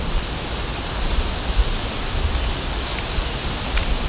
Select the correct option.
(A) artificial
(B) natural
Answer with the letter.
B